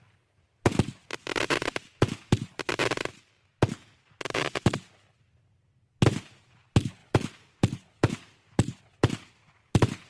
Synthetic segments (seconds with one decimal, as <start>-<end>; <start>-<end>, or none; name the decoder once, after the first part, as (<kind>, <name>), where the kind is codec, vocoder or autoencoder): none